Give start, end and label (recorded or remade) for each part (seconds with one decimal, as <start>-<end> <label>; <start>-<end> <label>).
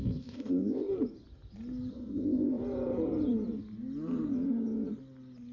0.0-0.9 remade; 0.9-1.9 recorded; 1.9-2.6 remade; 2.6-5.5 recorded